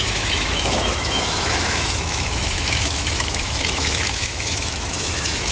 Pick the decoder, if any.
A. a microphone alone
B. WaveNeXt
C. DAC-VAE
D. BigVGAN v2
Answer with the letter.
C